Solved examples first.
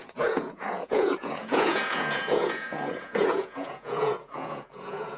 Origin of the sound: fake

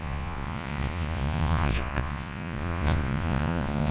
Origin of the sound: fake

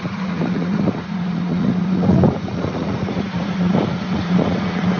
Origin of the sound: fake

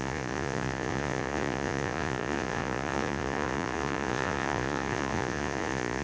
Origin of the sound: fake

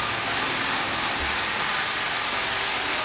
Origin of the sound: real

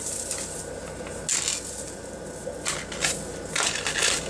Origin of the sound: real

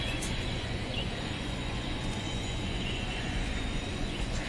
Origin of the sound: fake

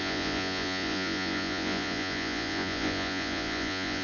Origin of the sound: fake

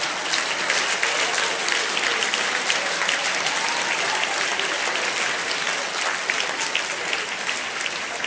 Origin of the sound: real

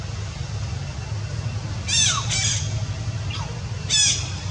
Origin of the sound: real